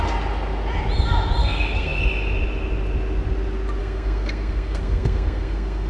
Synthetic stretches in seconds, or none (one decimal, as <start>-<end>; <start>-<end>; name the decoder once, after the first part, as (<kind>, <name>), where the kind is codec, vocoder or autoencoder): 1.4-2.0 (codec, SNAC); 3.8-5.9